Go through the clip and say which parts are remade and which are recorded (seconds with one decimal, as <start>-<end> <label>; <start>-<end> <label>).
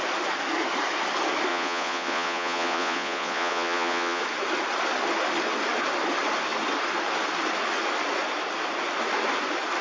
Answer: 0.0-1.5 recorded; 1.5-4.2 remade; 4.2-9.8 recorded